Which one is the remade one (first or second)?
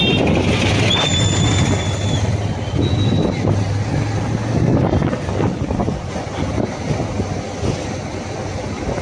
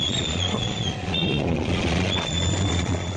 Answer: second